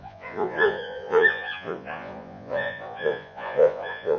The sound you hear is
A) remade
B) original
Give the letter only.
A